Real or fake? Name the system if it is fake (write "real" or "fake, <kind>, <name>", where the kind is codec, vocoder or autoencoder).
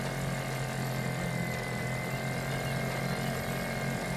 real